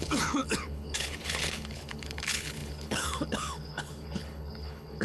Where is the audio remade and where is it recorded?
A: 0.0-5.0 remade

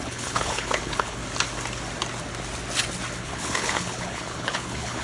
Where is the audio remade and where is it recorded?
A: 0.0-1.2 remade; 1.2-3.2 recorded; 3.2-5.0 remade

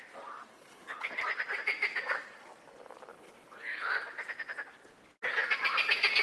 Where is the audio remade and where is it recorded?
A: 0.0-0.5 recorded; 0.5-1.2 remade; 1.2-3.1 recorded; 3.1-3.9 remade; 3.9-6.2 recorded

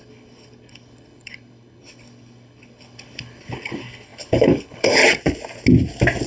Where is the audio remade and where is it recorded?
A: 0.0-5.0 remade; 5.0-6.3 recorded

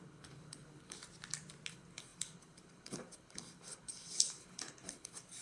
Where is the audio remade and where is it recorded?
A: 0.0-1.0 remade; 1.0-1.7 recorded; 1.7-5.4 remade